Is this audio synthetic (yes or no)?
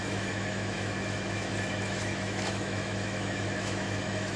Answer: yes